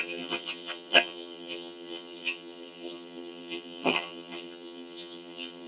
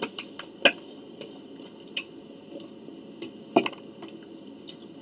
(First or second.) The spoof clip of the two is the first